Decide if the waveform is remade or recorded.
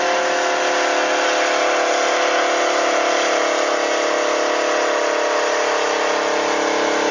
recorded